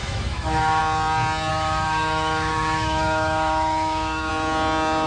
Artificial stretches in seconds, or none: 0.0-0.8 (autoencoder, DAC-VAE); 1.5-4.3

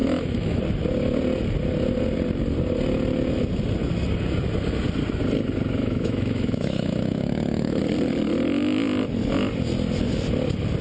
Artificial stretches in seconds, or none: 0.0-0.6 (autoencoder, DAC-VAE); 5.8-7.8

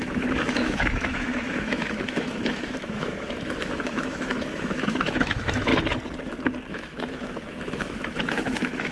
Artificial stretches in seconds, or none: 0.0-5.7 (autoencoder, DAC-VAE); 6.7-8.9

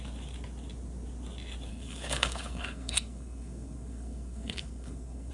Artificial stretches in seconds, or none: 1.7-5.3 (codec, SNAC)

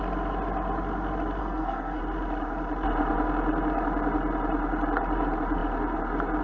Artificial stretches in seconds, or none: 1.4-2.0 (codec, SNAC)

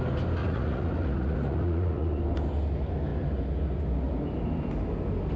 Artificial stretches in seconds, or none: 0.4-2.2 (vocoder, Vocos)

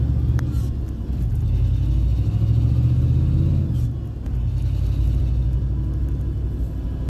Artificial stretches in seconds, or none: none